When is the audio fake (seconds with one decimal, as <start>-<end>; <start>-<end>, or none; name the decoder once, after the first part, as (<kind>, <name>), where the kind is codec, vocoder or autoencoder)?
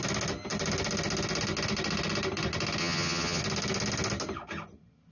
2.8-3.4 (vocoder, HiFi-GAN)